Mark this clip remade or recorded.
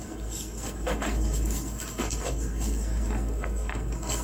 remade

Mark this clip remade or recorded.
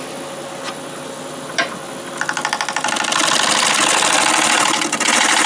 recorded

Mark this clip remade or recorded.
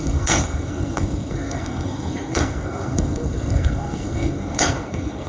remade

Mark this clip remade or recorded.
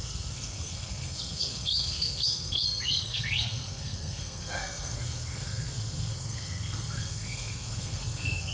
remade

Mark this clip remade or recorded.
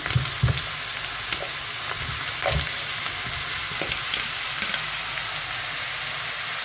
recorded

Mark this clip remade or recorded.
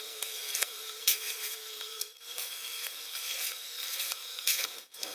remade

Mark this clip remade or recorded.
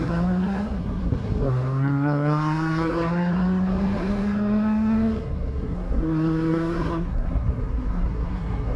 remade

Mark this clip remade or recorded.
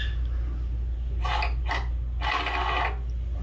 recorded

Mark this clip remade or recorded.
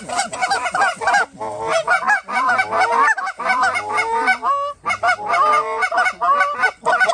recorded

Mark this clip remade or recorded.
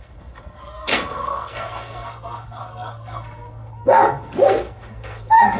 remade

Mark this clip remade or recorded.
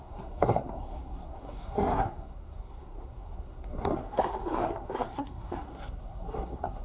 remade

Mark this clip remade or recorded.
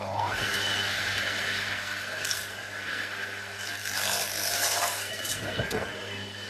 remade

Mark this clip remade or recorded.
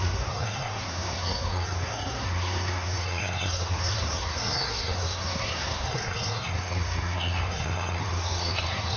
remade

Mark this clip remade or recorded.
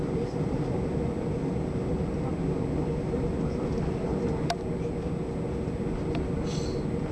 recorded